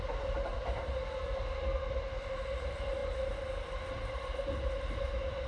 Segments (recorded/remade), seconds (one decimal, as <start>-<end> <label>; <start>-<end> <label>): 0.0-5.5 recorded